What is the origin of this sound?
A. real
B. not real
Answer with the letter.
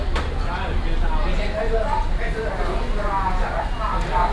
A